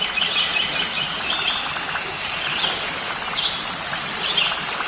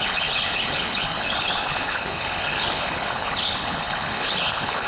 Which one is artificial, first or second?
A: second